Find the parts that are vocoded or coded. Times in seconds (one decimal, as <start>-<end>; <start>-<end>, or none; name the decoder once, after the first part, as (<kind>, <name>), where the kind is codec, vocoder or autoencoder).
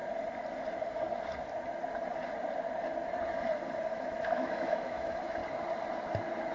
3.9-5.4 (autoencoder, DAC-VAE)